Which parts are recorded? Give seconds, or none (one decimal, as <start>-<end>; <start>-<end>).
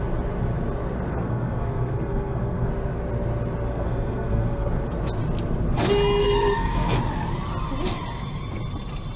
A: 0.0-1.1; 2.7-3.7; 4.8-6.2; 7.0-9.2